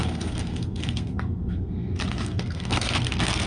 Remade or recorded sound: remade